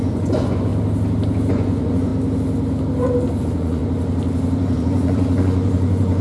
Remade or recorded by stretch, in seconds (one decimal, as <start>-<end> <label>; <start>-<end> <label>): 0.0-0.7 remade; 0.7-1.5 recorded; 1.5-2.1 remade; 2.1-3.4 recorded; 3.4-3.8 remade; 3.8-4.6 recorded; 4.6-6.2 remade